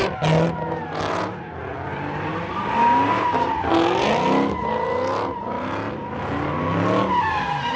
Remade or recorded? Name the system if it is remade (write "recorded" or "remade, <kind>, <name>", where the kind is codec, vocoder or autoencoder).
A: recorded